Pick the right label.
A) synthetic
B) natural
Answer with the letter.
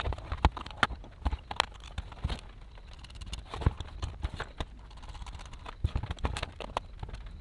B